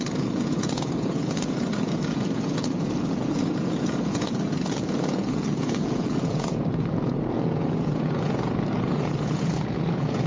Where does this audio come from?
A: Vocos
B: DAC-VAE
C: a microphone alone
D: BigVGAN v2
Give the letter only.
A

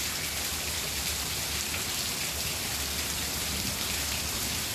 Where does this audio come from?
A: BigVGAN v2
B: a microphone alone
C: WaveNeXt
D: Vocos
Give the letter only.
B